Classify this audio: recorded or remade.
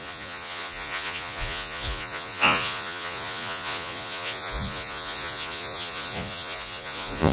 remade